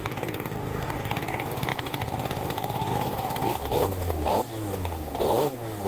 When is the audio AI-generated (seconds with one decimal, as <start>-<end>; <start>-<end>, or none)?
0.0-5.9